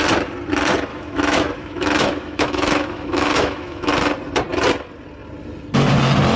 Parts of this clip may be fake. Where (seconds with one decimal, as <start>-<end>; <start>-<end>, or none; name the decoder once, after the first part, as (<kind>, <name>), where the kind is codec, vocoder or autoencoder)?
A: 0.9-3.9 (autoencoder, DAC-VAE)

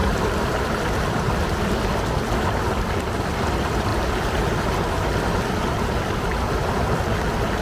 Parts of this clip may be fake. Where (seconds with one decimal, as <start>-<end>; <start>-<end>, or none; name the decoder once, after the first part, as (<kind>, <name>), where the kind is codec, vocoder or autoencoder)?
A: 0.0-1.2 (vocoder, BigVGAN v2)

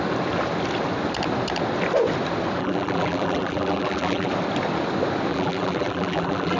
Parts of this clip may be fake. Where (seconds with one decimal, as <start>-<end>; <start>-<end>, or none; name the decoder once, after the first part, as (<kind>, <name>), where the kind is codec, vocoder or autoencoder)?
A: 2.6-4.3 (vocoder, BigVGAN v2); 5.3-6.6

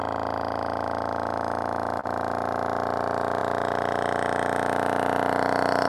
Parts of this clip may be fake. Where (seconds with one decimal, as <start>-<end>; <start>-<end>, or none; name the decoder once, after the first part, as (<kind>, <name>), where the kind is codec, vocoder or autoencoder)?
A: none

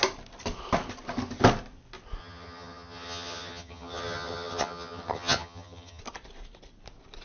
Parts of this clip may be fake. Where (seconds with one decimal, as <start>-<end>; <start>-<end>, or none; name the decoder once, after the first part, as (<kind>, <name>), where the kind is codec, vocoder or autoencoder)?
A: 2.2-6.0 (vocoder, HiFi-GAN)